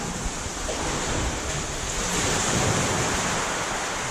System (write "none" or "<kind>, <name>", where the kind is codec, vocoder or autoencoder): vocoder, BigVGAN v2